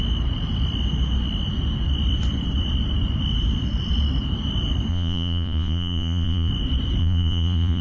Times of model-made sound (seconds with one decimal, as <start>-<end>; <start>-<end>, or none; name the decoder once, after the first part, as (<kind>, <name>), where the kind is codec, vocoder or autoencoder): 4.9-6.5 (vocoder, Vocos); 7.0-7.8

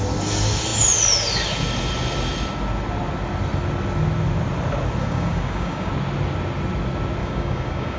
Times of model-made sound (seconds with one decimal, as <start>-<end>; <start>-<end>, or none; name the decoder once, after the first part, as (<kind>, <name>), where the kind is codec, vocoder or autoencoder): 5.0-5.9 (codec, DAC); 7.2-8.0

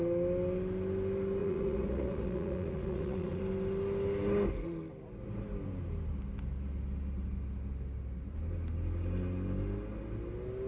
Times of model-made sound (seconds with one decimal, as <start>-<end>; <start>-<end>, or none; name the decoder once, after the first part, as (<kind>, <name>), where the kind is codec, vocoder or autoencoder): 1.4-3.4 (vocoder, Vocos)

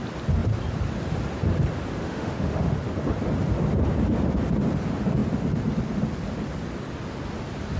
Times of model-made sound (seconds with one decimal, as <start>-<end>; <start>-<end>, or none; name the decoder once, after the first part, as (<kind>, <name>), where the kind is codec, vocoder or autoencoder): 2.0-2.7 (autoencoder, DAC-VAE)

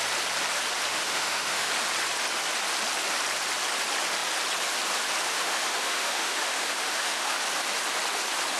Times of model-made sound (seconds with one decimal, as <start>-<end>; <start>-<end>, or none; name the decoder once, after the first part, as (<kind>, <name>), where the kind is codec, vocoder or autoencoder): 0.9-1.7 (autoencoder, DAC-VAE); 5.3-7.4